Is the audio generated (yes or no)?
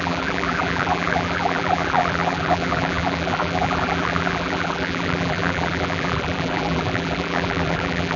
yes